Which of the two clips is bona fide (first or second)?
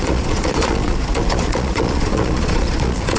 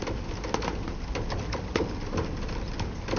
second